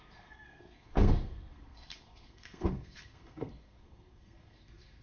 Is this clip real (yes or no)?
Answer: no